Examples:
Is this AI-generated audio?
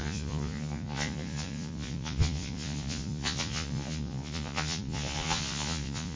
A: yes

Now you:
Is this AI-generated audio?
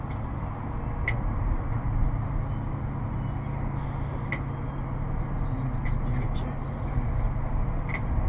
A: no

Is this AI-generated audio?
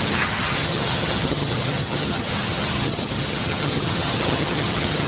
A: yes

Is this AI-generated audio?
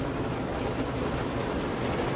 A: no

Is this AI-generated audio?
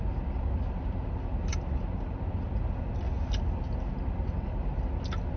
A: no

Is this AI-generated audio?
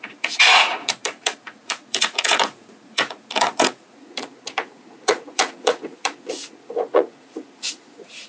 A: yes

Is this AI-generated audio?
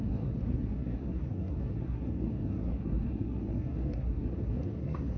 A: yes